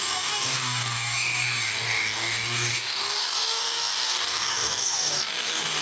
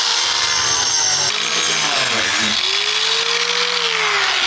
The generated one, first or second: first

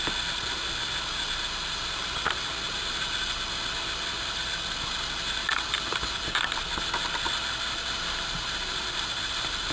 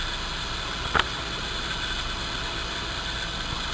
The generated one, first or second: second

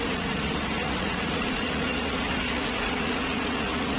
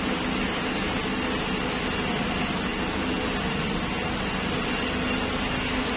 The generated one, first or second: first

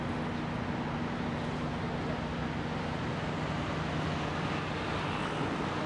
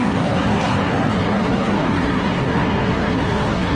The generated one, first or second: second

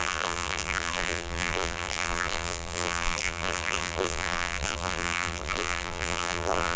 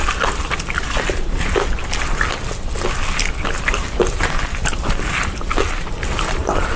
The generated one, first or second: first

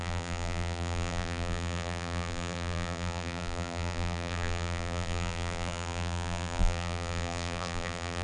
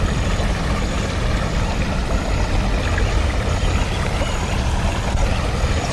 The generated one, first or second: first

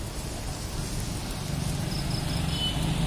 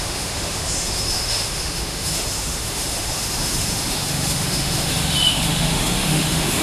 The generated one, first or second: second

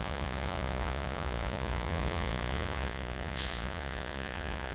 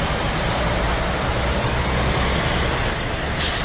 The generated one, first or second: first